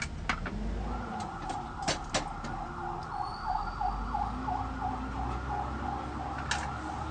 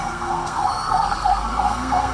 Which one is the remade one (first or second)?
second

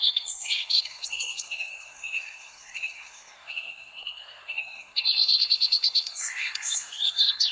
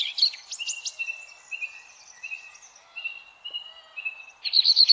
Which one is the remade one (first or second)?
first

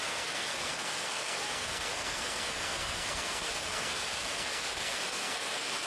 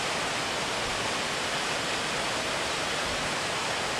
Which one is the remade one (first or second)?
first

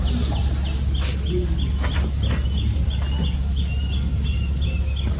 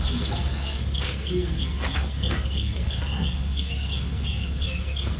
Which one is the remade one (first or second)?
second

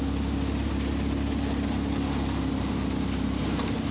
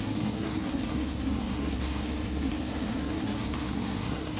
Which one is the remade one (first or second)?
second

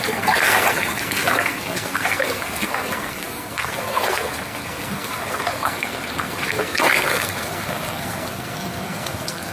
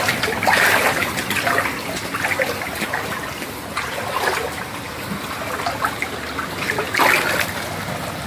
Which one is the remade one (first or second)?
first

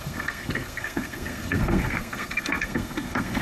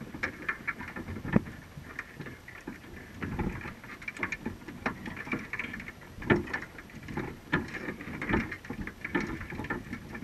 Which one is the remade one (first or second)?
first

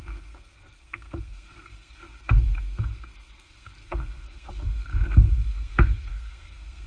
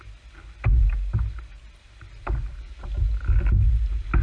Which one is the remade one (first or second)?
first